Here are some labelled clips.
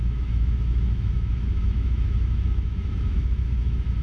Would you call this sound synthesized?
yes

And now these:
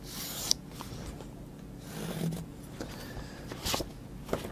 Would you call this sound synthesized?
no